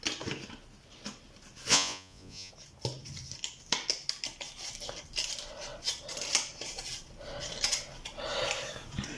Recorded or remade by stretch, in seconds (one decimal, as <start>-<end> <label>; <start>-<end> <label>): 0.0-1.7 recorded; 1.7-2.5 remade; 2.5-9.2 recorded